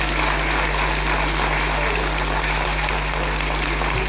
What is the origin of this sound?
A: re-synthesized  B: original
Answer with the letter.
B